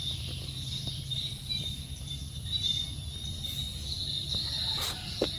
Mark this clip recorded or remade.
recorded